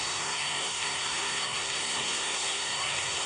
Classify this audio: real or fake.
fake